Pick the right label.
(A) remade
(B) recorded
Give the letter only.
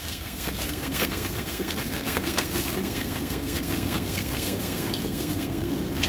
A